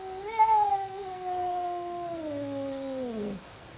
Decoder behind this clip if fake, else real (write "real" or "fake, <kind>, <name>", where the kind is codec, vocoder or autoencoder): fake, codec, SNAC